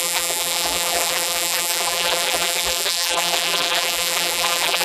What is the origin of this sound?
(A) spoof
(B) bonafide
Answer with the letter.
A